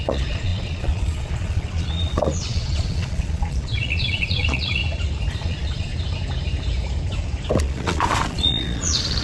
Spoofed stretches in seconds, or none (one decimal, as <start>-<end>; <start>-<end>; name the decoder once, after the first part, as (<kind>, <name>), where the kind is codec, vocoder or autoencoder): 0.0-4.8 (vocoder, Vocos); 5.3-5.9; 7.6-9.2